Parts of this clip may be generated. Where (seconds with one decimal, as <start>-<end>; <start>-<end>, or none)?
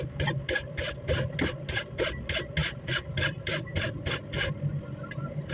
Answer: 2.6-4.1